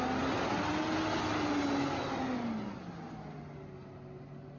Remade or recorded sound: recorded